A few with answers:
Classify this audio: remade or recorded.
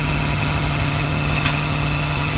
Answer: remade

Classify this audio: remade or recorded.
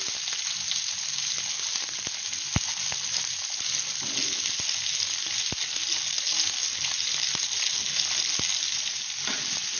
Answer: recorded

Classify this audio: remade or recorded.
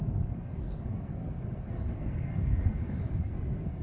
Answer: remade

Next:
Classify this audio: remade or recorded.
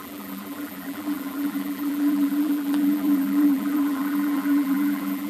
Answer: remade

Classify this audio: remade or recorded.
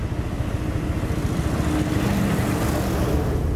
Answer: recorded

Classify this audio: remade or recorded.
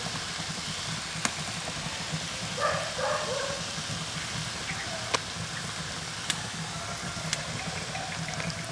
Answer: recorded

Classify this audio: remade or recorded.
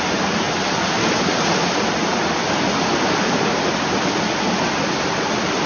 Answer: recorded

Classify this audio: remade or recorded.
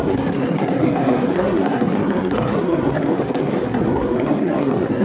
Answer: remade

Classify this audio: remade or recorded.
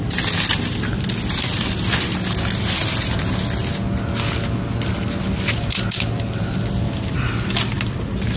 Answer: recorded